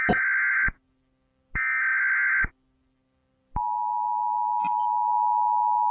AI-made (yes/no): no